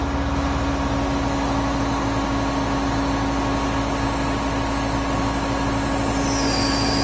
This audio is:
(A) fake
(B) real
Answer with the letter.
B